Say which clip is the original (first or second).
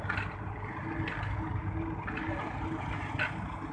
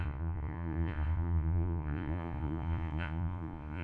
first